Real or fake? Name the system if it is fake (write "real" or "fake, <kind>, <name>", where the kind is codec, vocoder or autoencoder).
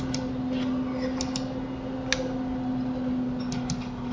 real